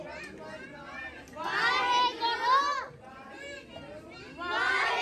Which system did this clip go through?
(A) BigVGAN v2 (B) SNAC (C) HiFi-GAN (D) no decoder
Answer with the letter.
D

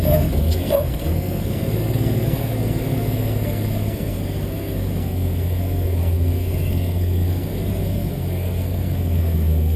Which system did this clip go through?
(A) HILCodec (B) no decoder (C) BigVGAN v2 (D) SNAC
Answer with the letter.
D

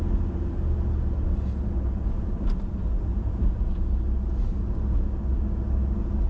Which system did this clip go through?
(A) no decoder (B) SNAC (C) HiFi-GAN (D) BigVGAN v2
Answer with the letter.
A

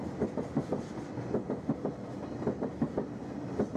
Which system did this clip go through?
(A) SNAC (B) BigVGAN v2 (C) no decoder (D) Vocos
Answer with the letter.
C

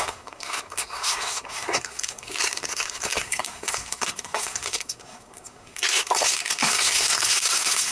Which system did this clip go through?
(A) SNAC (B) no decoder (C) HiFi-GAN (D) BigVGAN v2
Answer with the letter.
A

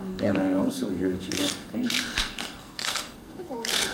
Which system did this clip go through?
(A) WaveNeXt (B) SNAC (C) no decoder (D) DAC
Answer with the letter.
B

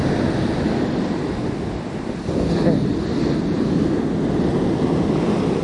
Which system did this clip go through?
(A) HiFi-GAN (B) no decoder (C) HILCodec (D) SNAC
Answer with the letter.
B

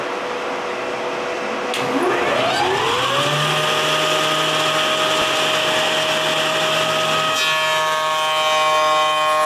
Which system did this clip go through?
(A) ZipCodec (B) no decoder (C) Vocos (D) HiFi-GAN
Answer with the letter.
B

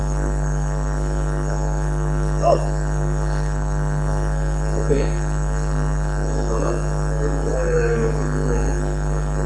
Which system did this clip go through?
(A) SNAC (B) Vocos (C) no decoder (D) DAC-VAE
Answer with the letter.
A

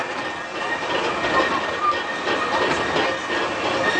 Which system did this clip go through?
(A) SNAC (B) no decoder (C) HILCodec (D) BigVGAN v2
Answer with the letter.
B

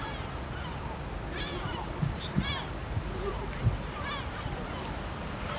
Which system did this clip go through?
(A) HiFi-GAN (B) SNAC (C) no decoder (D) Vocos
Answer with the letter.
C